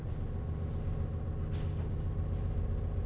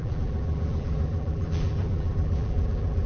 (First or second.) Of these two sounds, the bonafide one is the first